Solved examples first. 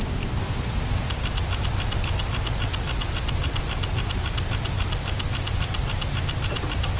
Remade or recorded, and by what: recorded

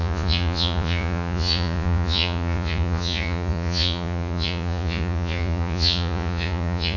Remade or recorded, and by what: remade, vocoder, Vocos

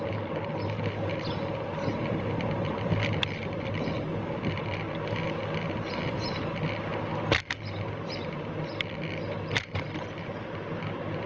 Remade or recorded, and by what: recorded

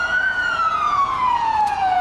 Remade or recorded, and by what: remade, vocoder, Vocos